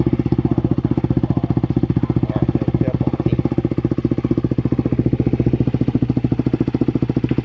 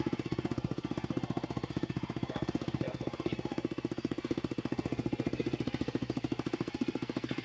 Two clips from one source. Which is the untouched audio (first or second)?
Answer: first